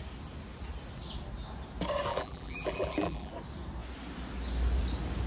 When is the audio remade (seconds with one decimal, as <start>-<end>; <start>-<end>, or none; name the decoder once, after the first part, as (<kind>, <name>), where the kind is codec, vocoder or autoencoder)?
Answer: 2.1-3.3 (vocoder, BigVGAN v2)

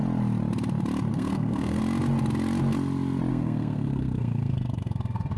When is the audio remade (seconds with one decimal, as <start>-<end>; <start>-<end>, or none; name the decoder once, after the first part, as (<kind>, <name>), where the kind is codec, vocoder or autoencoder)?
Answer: 1.1-1.8 (codec, SNAC); 3.3-5.4

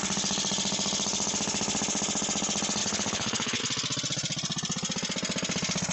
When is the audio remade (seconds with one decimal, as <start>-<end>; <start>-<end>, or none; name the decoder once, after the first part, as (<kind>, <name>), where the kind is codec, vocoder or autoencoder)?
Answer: 2.8-3.6 (codec, HILCodec)

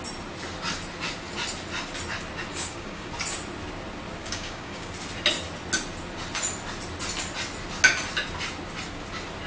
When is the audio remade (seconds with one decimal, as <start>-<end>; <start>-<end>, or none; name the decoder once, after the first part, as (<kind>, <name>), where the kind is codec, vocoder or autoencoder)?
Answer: 2.5-3.1 (codec, DAC); 4.2-4.9

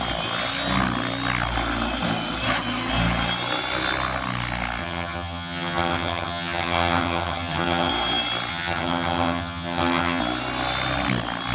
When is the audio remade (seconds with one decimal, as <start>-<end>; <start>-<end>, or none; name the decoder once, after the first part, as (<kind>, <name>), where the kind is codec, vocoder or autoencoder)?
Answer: 4.8-7.9 (vocoder, HiFi-GAN); 8.5-10.2